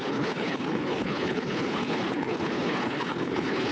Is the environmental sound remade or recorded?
remade